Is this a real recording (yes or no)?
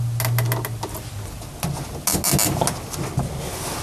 yes